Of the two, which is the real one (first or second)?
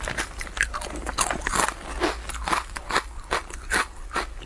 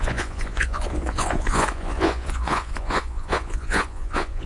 first